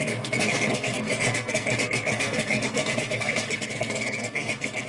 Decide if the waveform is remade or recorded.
remade